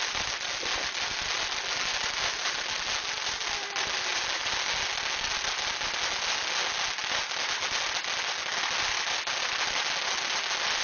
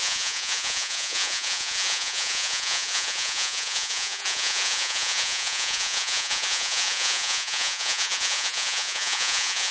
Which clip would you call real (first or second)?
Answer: first